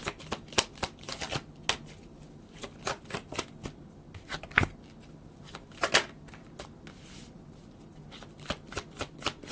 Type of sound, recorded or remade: recorded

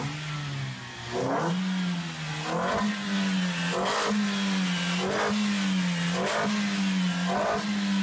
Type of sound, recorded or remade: recorded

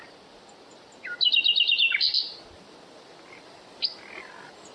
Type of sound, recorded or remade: recorded